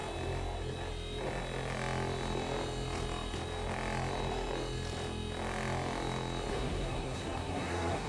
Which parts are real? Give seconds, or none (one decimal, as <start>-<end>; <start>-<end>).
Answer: 0.0-6.5